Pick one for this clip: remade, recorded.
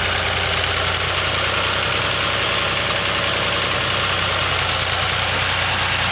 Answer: recorded